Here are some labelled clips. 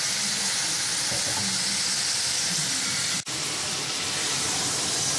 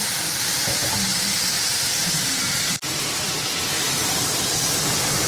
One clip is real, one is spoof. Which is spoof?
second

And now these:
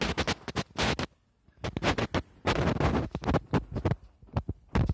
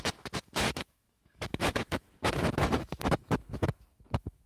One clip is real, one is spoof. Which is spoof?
second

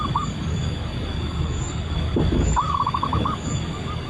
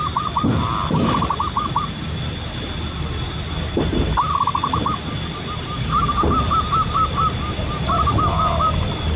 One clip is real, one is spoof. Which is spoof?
first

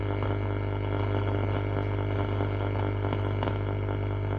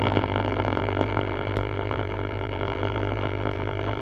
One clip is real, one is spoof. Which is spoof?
second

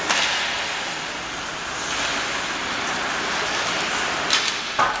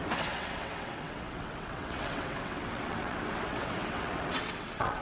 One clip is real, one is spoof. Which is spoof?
second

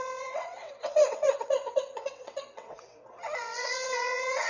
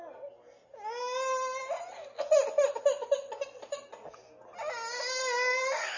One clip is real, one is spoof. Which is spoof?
first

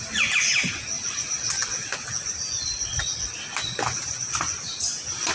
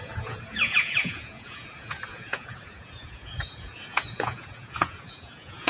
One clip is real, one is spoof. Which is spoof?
second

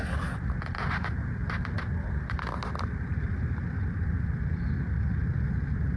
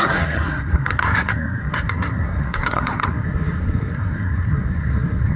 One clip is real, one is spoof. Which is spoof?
second